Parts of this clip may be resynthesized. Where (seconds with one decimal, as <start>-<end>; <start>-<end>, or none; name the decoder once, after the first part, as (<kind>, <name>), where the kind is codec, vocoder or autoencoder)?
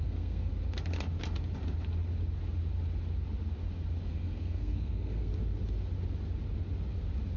0.0-0.5 (codec, SNAC); 4.1-5.3